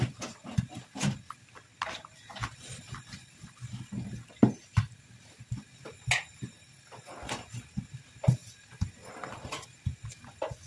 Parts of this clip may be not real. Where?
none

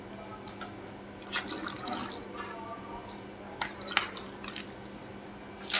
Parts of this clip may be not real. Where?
none

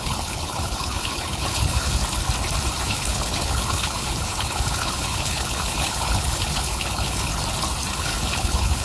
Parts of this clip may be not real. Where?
0.0-2.0 (codec, HILCodec); 2.8-7.3; 8.0-8.8

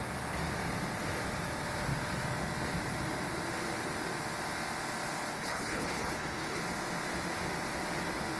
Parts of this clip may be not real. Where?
5.3-6.6 (codec, HILCodec)